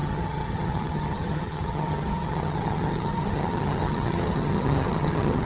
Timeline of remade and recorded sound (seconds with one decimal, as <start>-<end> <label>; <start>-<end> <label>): 0.0-5.4 remade